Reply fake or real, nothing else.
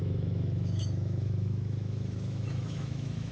fake